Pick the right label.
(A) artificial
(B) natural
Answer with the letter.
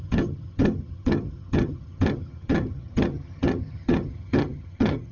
A